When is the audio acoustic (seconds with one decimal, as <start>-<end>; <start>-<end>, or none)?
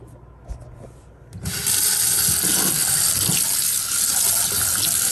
0.0-5.1